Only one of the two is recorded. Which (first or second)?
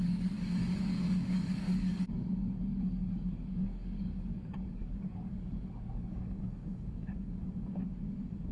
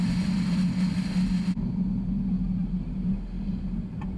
second